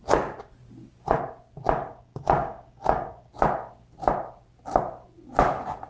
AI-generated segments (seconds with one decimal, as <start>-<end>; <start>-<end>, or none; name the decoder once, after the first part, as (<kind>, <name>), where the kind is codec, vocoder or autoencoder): 1.9-3.3 (codec, DAC)